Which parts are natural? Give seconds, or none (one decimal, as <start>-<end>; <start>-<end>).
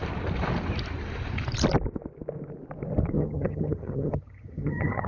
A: 0.0-3.1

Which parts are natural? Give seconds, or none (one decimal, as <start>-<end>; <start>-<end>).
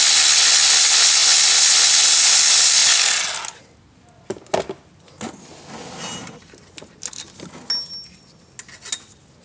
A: 0.0-9.4